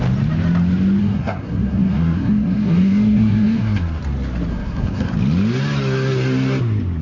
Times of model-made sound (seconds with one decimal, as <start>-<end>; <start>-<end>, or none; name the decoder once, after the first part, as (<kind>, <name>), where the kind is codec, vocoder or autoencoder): 1.0-4.0 (codec, SNAC); 4.5-5.1